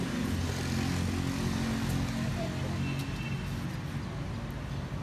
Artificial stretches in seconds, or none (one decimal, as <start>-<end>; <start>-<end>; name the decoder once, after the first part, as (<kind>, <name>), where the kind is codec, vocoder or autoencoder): none